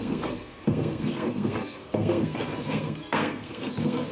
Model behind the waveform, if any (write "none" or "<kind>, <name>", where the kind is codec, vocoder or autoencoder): codec, SNAC